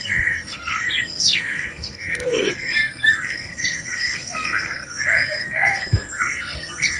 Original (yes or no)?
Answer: no